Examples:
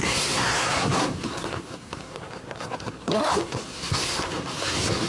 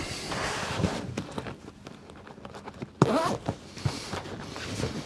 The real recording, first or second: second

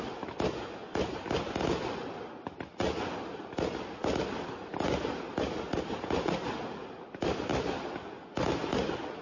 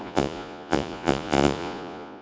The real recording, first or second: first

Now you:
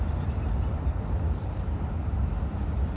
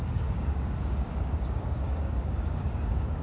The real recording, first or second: first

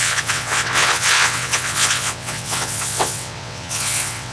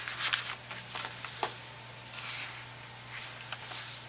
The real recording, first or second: second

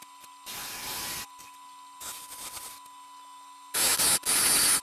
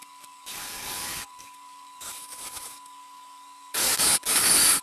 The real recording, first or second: first